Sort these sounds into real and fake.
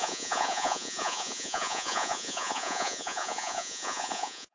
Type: fake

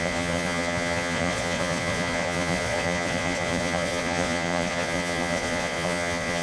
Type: fake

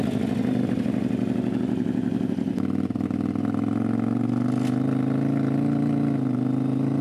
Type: real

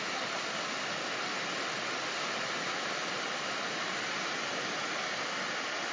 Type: real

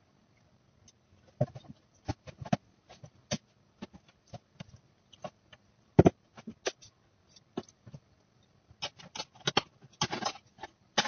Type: real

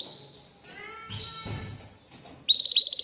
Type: real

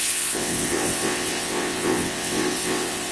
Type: fake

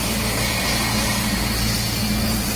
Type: real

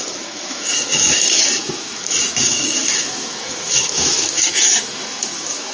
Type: fake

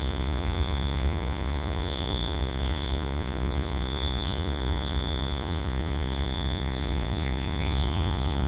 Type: fake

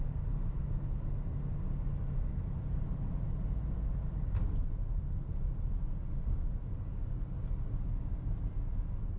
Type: real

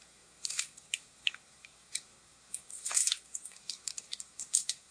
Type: fake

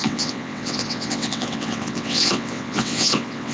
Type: fake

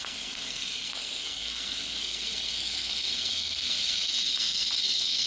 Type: fake